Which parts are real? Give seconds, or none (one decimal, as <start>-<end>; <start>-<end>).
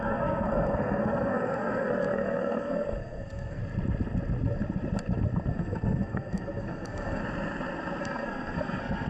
3.6-5.5; 7.2-8.0